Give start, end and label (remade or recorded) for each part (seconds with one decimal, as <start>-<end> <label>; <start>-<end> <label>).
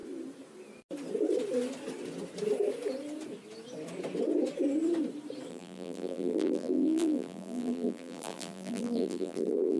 0.0-5.5 recorded; 5.5-9.8 remade